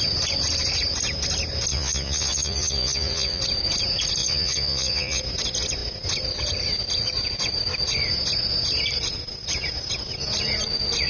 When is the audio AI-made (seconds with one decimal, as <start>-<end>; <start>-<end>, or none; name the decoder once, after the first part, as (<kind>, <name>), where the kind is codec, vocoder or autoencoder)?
1.7-3.4 (vocoder, Vocos); 4.2-5.2

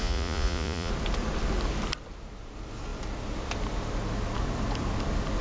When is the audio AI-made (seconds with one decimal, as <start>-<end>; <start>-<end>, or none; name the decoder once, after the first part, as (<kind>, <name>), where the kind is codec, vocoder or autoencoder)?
0.0-0.9 (vocoder, Vocos)

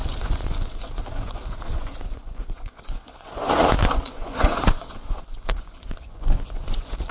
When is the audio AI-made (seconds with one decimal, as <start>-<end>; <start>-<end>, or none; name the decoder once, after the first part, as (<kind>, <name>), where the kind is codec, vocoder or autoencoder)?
0.0-7.1 (vocoder, Vocos)

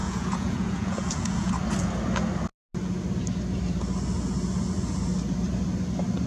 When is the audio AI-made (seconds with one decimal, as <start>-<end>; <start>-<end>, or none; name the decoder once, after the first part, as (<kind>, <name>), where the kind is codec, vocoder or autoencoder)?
0.0-1.5 (vocoder, Vocos)

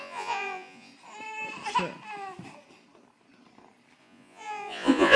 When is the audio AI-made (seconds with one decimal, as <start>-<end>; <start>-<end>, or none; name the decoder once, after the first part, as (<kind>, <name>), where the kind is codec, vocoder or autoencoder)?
0.0-0.9 (vocoder, Vocos); 4.0-5.2

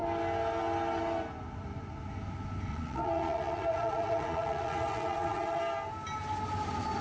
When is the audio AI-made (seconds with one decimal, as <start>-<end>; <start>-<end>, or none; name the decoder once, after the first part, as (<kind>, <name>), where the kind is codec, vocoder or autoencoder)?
2.7-5.6 (vocoder, Vocos)